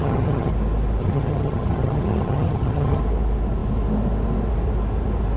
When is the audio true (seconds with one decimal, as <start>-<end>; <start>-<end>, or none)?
0.5-1.0; 3.0-5.4